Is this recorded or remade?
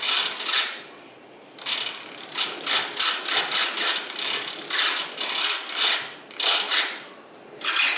recorded